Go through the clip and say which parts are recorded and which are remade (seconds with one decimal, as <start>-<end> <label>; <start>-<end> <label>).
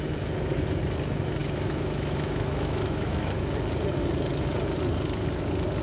0.0-1.4 recorded; 1.4-3.3 remade; 3.3-5.8 recorded